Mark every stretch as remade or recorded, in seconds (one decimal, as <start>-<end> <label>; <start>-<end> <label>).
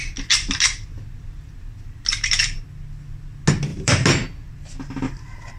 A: 0.0-2.3 remade; 2.3-3.7 recorded; 3.7-4.5 remade; 4.5-5.6 recorded